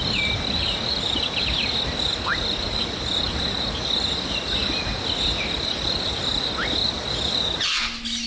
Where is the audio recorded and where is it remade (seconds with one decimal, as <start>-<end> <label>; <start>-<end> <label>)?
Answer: 0.0-8.3 recorded